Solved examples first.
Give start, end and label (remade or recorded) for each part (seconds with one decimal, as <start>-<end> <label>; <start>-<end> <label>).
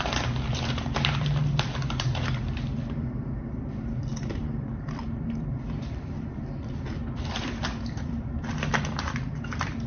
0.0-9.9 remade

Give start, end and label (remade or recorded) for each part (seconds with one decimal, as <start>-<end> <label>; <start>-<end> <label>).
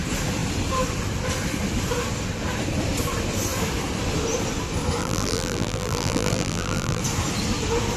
0.0-5.0 recorded; 5.0-7.0 remade; 7.0-8.0 recorded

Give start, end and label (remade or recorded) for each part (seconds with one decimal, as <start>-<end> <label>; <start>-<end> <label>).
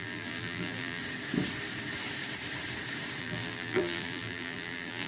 0.0-1.0 remade; 1.0-3.2 recorded; 3.2-5.1 remade